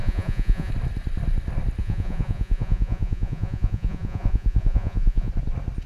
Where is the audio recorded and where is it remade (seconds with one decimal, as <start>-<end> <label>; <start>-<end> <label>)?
0.0-0.7 remade; 0.7-1.8 recorded; 1.8-5.3 remade; 5.3-5.9 recorded